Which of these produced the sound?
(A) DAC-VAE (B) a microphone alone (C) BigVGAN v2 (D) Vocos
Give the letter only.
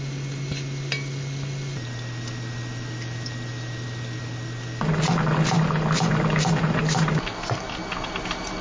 B